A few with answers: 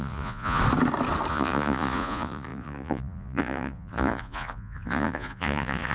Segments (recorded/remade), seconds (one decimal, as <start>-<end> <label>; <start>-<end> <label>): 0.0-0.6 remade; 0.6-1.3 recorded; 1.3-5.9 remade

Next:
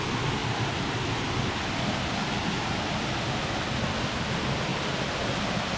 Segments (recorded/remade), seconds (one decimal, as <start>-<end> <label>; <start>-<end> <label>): 0.0-5.8 recorded

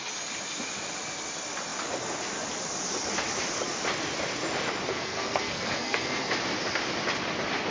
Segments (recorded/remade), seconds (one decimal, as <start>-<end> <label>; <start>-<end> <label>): 0.0-4.9 recorded; 4.9-6.3 remade; 6.3-7.7 recorded